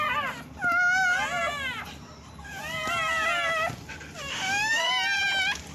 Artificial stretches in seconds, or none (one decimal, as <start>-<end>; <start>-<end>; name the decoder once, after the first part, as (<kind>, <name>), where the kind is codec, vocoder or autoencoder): 4.3-4.9 (autoencoder, DAC-VAE)